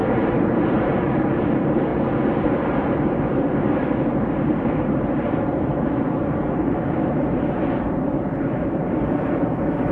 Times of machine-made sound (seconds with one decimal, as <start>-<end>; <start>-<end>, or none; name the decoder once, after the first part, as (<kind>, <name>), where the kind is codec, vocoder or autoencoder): 0.0-1.9 (vocoder, BigVGAN v2); 2.5-9.9